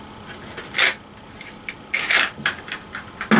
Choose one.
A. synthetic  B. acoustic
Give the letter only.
B